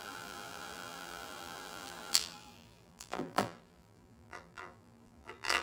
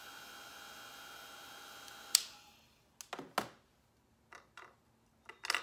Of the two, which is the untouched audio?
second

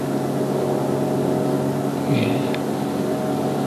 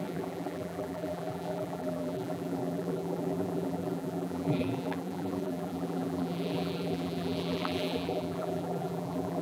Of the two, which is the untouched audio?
first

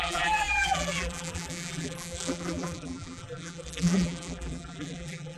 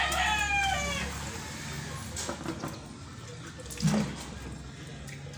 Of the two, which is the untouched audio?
second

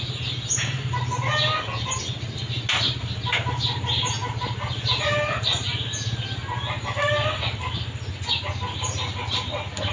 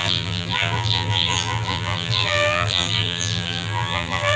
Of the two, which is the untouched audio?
first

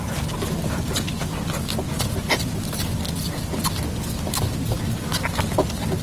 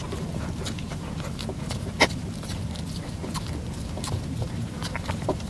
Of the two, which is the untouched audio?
first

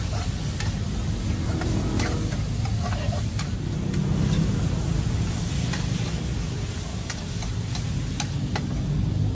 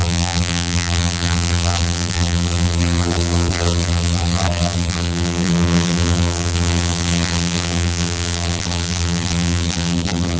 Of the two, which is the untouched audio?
first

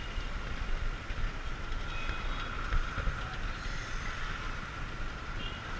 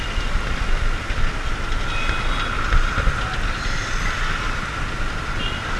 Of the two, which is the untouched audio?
second